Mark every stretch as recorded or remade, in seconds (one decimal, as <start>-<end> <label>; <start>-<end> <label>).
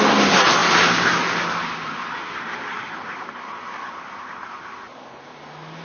0.0-5.8 recorded